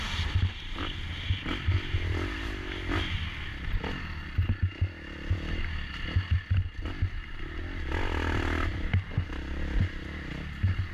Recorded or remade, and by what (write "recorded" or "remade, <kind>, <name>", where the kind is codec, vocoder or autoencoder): recorded